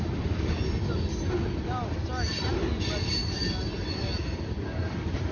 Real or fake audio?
real